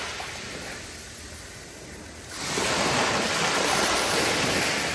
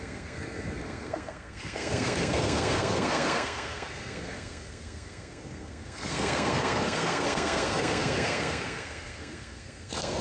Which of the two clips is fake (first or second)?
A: second